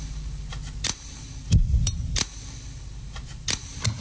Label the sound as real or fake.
real